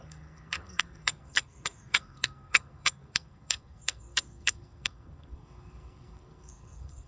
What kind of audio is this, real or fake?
fake